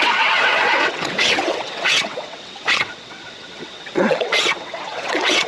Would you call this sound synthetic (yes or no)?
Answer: yes